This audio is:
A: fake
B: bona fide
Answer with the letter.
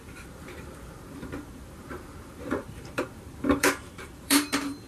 A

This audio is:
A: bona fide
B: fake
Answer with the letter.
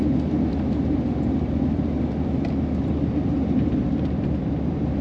B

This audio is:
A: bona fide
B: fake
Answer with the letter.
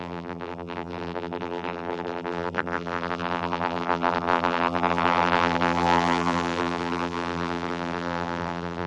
B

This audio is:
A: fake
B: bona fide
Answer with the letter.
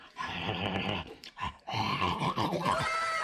A